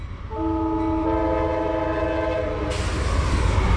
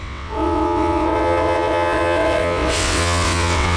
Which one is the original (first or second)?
first